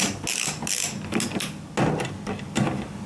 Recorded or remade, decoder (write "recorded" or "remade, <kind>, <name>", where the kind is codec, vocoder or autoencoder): recorded